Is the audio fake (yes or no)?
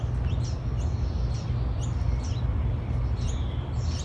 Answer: no